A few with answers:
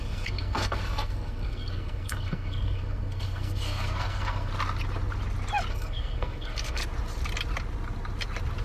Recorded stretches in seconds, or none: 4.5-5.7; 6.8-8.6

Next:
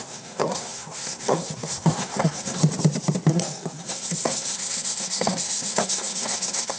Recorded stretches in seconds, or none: 2.6-3.3

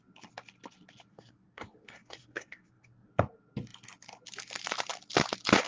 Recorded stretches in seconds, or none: 0.0-1.1; 3.1-5.7